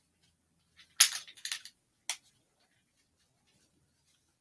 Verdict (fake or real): real